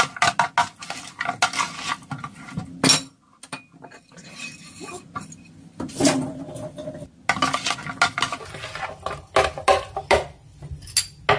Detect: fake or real real